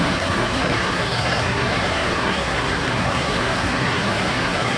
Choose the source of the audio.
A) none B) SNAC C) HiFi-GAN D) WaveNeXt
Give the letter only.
B